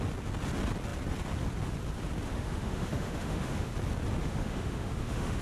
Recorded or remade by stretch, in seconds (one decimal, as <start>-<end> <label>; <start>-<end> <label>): 0.0-2.3 recorded; 2.3-3.7 remade; 3.7-4.2 recorded; 4.2-5.4 remade